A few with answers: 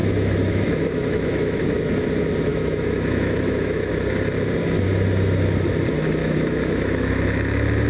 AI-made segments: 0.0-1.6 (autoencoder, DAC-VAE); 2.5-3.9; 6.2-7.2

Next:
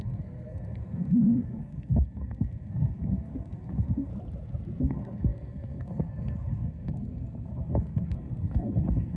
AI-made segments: 0.0-4.1 (codec, SNAC); 4.8-9.2

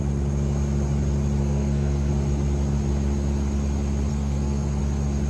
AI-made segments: 1.4-2.1 (codec, SNAC); 4.1-4.8

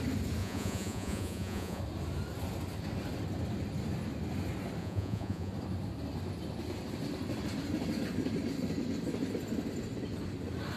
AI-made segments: 0.4-1.8 (vocoder, Vocos); 4.8-5.5